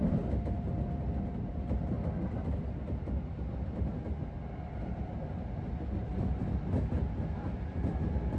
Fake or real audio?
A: real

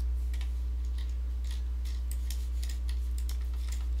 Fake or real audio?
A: real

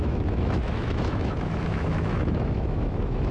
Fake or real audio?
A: fake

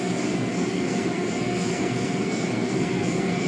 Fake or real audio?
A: fake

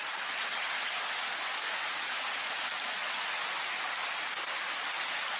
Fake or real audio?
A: real